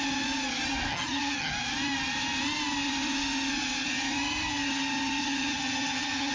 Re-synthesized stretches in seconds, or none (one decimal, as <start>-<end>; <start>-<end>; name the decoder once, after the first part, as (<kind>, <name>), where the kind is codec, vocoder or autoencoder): 0.9-1.5 (vocoder, HiFi-GAN); 5.2-6.3